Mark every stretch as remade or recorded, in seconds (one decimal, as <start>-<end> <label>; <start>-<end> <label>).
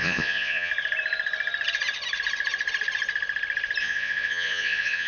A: 0.0-0.7 remade; 0.7-3.8 recorded; 3.8-5.1 remade